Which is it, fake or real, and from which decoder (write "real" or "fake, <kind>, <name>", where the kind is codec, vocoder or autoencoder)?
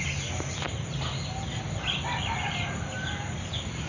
real